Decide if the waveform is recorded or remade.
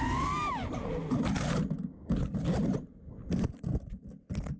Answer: recorded